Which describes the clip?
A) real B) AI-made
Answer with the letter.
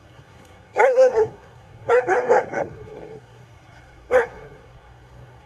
B